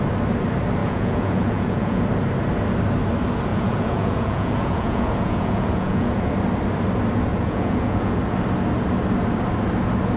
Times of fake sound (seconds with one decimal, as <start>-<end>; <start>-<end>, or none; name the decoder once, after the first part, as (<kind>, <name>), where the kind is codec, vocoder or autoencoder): 0.8-2.0 (vocoder, Vocos); 3.5-6.3; 7.3-8.2